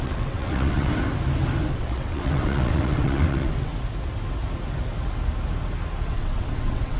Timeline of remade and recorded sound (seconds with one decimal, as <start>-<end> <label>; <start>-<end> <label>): 0.0-0.9 remade; 0.9-1.7 recorded; 1.7-3.7 remade; 3.7-6.1 recorded; 6.1-7.0 remade